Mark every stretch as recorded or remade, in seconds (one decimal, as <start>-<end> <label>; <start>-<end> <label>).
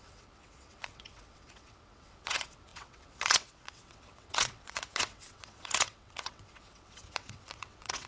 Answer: 0.0-8.1 remade